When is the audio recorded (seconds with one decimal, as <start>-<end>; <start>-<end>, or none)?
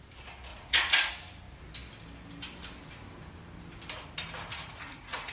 0.0-0.5; 1.1-4.5